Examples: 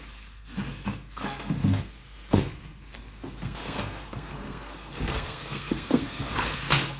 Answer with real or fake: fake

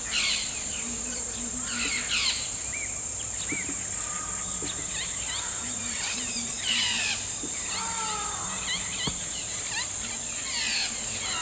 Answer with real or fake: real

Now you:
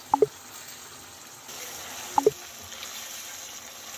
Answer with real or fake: real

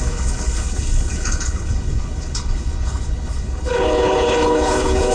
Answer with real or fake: fake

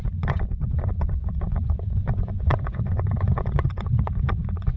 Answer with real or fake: fake